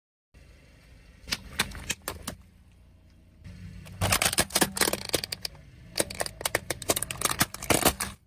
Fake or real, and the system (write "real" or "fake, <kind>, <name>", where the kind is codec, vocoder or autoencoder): real